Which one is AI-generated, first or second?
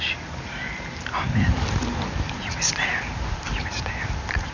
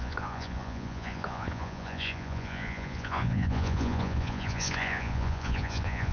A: second